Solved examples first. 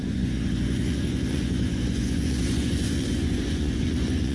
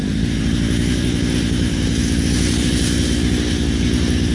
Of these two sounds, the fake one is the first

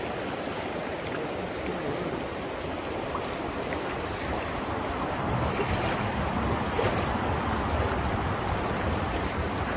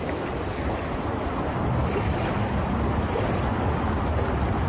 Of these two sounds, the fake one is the first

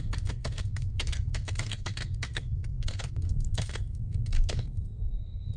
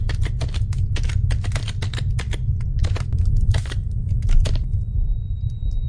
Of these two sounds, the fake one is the first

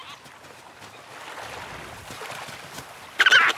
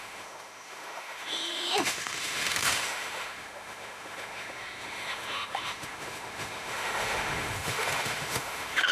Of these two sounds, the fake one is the second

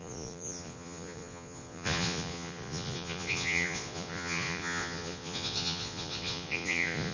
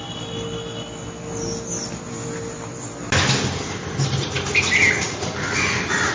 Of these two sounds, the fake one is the first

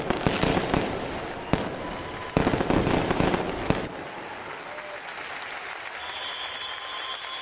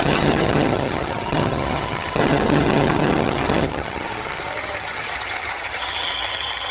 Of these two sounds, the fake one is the second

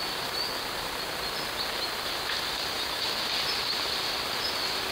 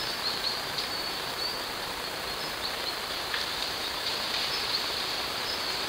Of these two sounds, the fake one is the second